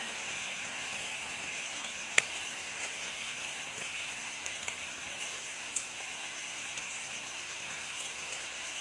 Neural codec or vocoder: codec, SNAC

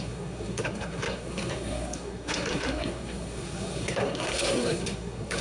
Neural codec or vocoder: codec, SNAC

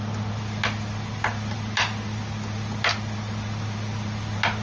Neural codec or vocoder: none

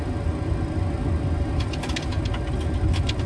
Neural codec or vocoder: none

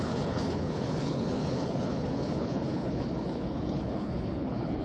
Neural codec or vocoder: codec, HILCodec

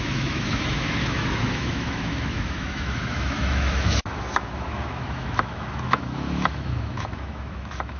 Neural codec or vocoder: autoencoder, DAC-VAE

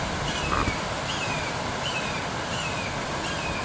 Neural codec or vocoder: none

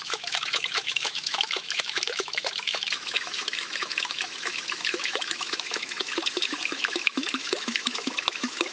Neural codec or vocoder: autoencoder, DAC-VAE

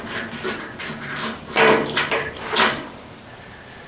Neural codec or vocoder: vocoder, BigVGAN v2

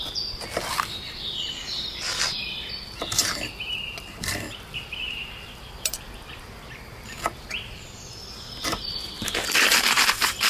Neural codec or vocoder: vocoder, BigVGAN v2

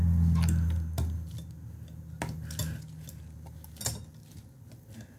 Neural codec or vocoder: none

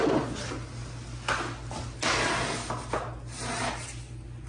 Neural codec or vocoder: none